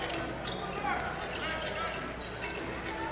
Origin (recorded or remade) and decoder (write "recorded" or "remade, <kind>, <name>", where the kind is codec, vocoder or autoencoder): recorded